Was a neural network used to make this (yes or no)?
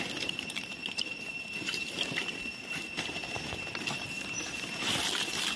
no